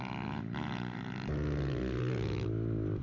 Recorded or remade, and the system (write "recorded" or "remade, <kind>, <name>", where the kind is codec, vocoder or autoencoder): recorded